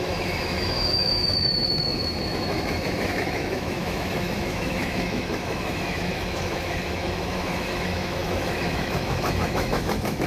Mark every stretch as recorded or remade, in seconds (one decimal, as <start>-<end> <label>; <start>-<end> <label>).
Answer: 0.0-10.3 remade